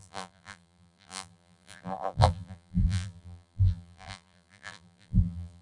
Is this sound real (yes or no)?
no